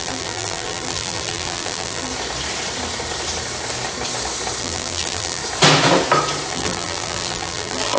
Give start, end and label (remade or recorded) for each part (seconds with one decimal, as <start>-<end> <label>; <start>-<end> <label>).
0.0-2.1 remade; 2.1-4.6 recorded; 4.6-5.4 remade; 5.4-6.5 recorded; 6.5-8.0 remade